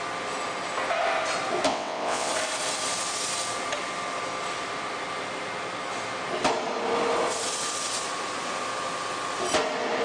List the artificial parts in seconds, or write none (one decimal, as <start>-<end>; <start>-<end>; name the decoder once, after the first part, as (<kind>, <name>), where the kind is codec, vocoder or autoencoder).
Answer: 1.7-2.3 (vocoder, WaveNeXt)